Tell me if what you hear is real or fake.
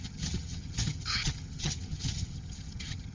fake